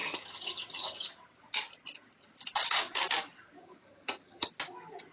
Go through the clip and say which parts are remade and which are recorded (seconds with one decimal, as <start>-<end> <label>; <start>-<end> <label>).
0.0-1.1 remade; 1.1-3.6 recorded; 3.6-4.5 remade; 4.5-5.1 recorded